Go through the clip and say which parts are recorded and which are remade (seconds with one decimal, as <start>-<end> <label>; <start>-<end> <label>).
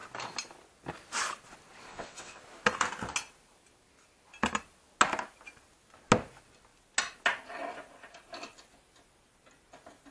0.0-1.9 recorded; 1.9-2.4 remade; 2.4-10.1 recorded